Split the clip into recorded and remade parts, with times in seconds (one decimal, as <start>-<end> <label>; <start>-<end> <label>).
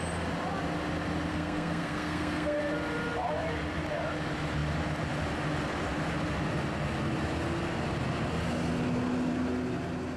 0.0-1.3 recorded; 1.3-2.6 remade; 2.6-10.2 recorded